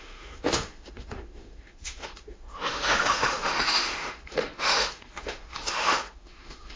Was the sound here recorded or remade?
remade